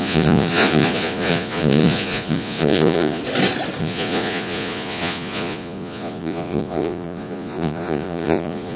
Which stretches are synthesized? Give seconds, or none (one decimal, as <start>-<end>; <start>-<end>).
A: 0.0-3.2; 3.8-8.8